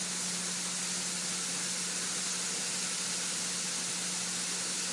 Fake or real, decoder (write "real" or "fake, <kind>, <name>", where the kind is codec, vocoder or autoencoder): real